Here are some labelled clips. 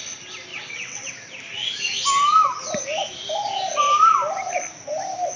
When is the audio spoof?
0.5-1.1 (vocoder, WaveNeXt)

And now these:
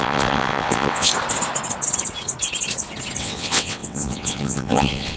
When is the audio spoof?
0.0-1.1 (vocoder, WaveNeXt); 3.2-5.2

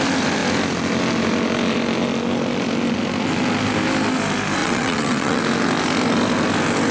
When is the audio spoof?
4.6-5.4 (vocoder, WaveNeXt)

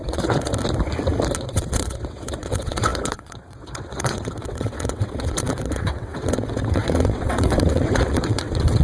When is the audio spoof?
0.0-0.5 (vocoder, WaveNeXt); 1.4-8.8